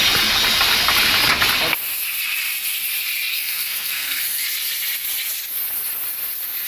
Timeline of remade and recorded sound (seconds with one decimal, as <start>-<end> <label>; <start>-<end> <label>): 0.0-3.3 recorded; 3.3-4.4 remade; 4.4-6.7 recorded